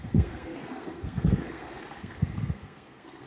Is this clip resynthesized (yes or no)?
yes